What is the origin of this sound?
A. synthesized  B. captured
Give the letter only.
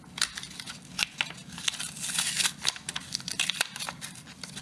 B